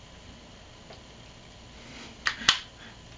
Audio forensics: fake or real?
real